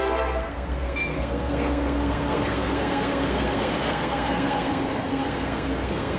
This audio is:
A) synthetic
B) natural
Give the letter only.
A